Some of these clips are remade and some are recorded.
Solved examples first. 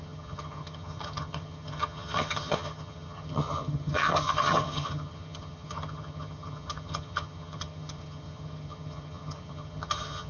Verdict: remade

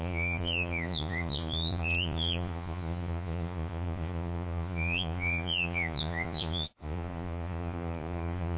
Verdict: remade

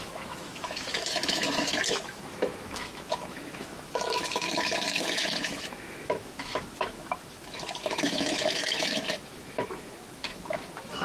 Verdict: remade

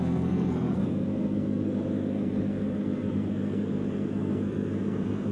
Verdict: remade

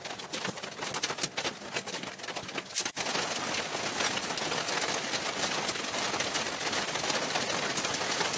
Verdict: recorded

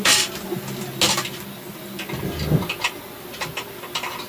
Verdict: recorded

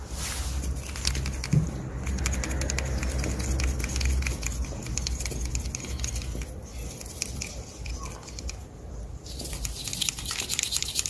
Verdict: recorded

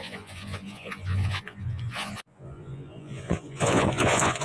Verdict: remade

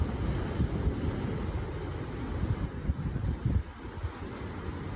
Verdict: recorded